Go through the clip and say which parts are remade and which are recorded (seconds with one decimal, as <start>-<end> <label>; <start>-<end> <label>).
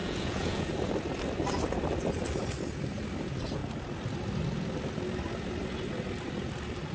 0.0-0.7 remade; 0.7-6.9 recorded